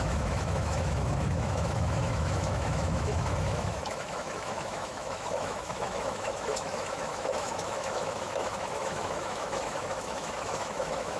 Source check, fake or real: fake